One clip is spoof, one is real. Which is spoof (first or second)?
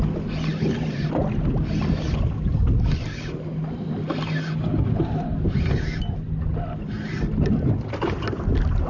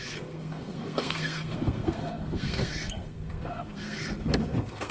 second